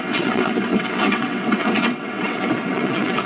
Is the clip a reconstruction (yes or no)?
yes